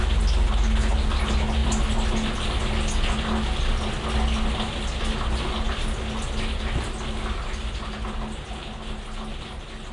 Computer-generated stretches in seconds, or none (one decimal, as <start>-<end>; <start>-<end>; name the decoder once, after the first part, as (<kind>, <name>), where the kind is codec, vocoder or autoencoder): none

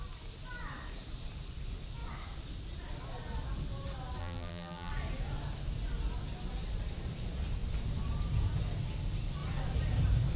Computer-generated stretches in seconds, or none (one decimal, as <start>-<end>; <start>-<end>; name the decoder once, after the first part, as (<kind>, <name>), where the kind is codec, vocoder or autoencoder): 4.2-4.9 (vocoder, BigVGAN v2)

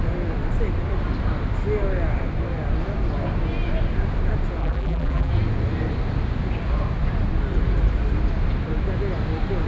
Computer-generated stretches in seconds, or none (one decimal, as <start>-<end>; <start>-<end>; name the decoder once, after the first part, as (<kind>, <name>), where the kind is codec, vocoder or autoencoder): 4.6-5.3 (vocoder, BigVGAN v2)